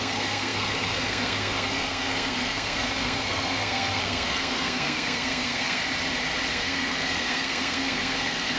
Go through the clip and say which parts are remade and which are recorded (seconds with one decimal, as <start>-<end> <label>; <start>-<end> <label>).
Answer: 0.0-5.8 remade; 5.8-6.5 recorded; 6.5-8.6 remade

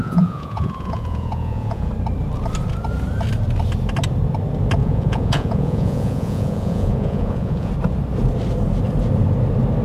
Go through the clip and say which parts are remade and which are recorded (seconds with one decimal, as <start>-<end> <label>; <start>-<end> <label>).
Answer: 0.0-1.9 remade; 1.9-4.8 recorded; 4.8-7.7 remade; 7.7-9.8 recorded

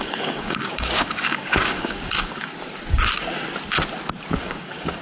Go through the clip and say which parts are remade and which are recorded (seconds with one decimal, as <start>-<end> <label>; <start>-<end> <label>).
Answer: 0.0-2.5 remade; 2.5-4.4 recorded; 4.4-5.0 remade

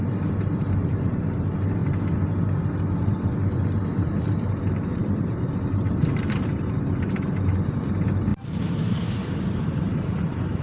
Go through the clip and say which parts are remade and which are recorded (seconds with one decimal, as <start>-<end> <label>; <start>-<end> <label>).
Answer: 0.0-1.8 remade; 1.8-3.9 recorded; 3.9-10.6 remade

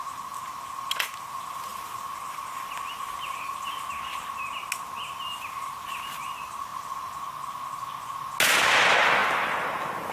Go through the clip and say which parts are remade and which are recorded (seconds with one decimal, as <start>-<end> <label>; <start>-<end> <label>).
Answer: 0.0-10.1 recorded